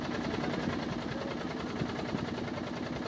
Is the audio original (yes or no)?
no